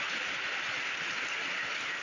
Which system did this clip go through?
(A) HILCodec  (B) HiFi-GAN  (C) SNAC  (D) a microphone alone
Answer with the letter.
D